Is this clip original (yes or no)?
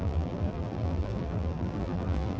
no